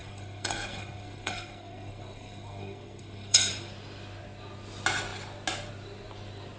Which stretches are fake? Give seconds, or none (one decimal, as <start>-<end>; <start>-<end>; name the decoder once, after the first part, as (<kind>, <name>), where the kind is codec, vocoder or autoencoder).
0.0-3.5 (codec, SNAC)